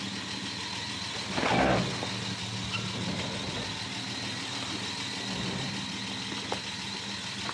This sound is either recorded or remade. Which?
recorded